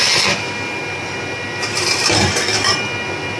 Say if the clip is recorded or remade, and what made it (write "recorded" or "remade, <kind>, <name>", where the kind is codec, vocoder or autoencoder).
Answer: recorded